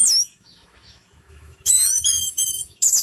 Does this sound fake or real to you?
fake